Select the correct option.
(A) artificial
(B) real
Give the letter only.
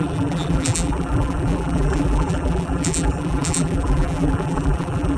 A